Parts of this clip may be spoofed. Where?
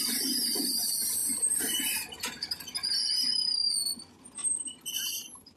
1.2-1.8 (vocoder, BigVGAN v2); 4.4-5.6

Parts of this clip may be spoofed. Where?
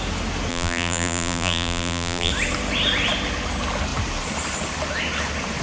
0.5-2.3 (vocoder, BigVGAN v2)